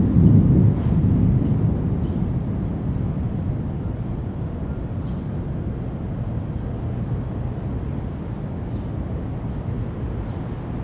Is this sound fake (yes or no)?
no